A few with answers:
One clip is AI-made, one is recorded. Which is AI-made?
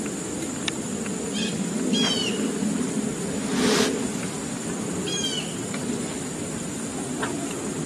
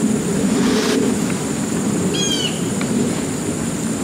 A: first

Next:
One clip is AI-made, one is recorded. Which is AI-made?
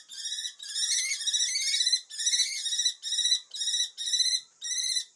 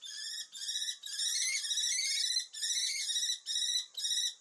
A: second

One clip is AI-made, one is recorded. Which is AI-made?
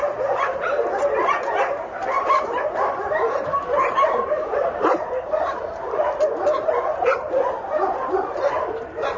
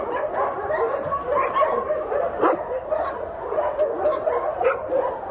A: first